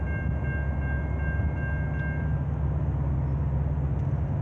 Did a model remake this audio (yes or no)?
no